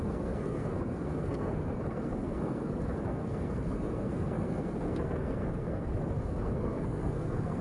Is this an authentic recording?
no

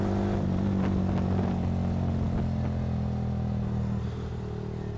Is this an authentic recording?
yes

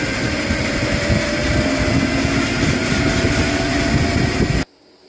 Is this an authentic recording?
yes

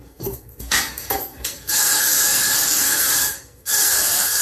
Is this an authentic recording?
no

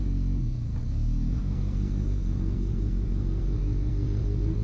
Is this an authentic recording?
no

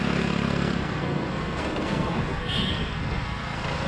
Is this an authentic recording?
no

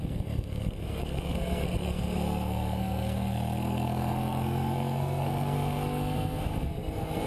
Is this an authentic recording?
no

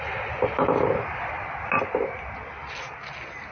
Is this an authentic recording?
yes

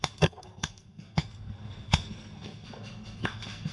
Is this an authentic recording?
no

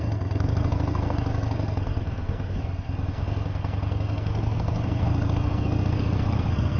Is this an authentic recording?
no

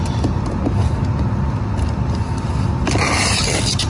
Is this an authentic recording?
yes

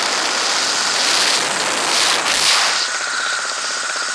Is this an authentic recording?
yes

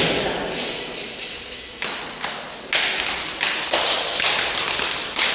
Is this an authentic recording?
yes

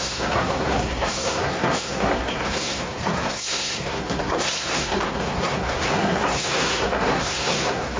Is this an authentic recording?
no